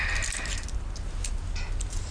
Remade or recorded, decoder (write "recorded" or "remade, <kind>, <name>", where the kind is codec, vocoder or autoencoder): recorded